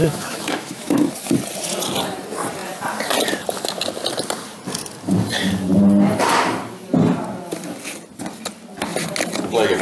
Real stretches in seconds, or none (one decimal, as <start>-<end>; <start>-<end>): 1.1-9.8